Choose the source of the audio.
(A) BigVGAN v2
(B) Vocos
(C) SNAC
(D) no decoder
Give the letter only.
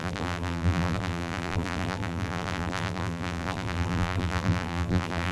A